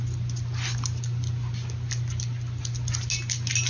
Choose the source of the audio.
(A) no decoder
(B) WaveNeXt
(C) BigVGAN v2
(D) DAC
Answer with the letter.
A